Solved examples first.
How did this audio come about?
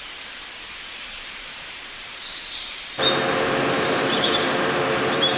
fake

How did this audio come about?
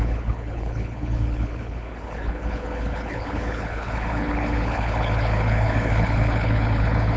fake